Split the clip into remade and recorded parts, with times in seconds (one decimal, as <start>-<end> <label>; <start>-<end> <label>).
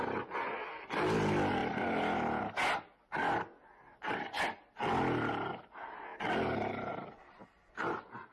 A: 0.0-8.3 recorded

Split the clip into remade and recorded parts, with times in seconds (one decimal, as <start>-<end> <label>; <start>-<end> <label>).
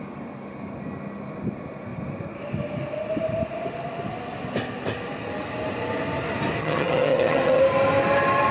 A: 0.0-6.6 recorded; 6.6-7.6 remade; 7.6-8.5 recorded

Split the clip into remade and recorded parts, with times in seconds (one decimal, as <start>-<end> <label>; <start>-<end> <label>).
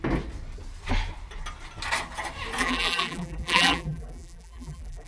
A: 0.0-2.6 recorded; 2.6-5.1 remade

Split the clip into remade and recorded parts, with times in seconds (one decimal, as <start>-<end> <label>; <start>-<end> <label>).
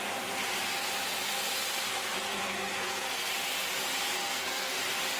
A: 0.0-2.3 recorded; 2.3-3.3 remade; 3.3-4.2 recorded; 4.2-4.8 remade; 4.8-5.2 recorded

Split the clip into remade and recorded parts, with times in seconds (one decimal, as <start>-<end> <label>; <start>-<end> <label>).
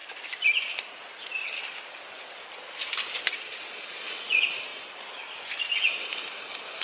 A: 0.0-6.8 recorded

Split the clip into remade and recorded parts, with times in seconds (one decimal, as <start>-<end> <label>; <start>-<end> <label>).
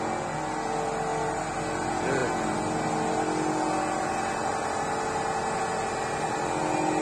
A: 0.0-7.0 recorded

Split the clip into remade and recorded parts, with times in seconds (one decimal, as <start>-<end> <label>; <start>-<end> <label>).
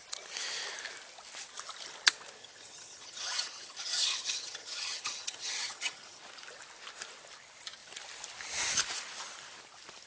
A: 0.0-2.4 recorded; 2.4-6.2 remade; 6.2-10.1 recorded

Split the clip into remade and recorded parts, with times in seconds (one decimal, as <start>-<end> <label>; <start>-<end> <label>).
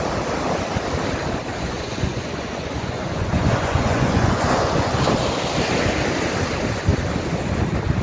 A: 0.0-1.5 recorded; 1.5-5.0 remade; 5.0-8.0 recorded